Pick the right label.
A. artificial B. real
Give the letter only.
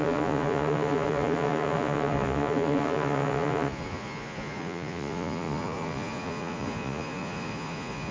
A